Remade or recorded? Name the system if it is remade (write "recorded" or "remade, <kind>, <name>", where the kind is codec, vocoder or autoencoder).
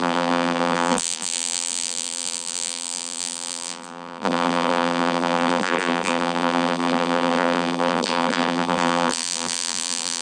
remade, vocoder, BigVGAN v2